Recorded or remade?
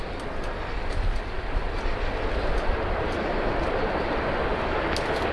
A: recorded